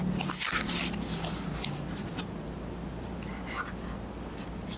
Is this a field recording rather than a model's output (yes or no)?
yes